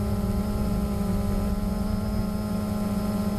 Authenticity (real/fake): real